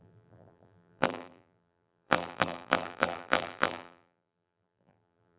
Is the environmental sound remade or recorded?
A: remade